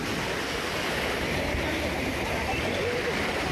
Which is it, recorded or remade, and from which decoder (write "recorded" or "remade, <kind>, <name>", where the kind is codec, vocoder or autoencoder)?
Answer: remade, vocoder, BigVGAN v2